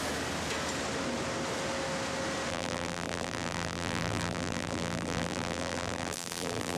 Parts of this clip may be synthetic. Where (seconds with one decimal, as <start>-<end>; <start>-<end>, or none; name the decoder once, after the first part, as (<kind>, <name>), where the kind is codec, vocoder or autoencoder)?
2.5-6.8 (vocoder, BigVGAN v2)